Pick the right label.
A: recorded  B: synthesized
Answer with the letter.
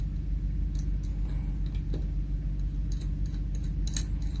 A